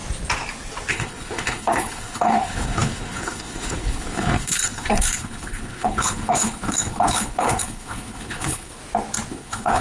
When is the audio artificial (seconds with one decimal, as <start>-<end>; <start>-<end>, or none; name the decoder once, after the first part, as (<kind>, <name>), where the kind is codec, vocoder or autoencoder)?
0.9-8.8 (codec, HILCodec); 9.3-9.8